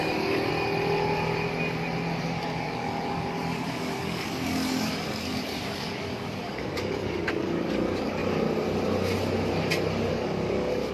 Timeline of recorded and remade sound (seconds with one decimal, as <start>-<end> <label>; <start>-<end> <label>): 0.0-0.5 remade; 0.5-2.2 recorded; 2.2-8.2 remade; 8.2-10.1 recorded; 10.1-10.9 remade